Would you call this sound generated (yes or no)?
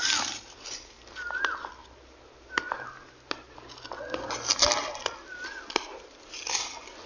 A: no